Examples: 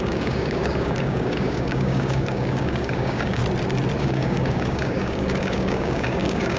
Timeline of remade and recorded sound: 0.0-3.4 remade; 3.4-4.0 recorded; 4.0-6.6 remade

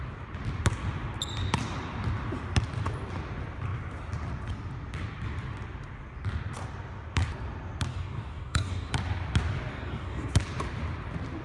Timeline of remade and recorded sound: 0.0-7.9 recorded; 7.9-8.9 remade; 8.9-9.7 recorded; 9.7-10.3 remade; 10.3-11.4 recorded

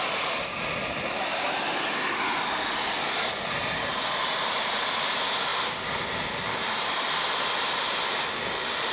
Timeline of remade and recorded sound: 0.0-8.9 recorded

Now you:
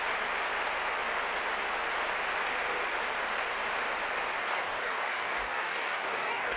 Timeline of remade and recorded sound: 0.0-4.4 recorded; 4.4-6.6 remade